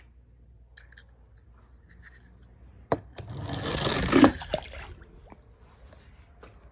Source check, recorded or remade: recorded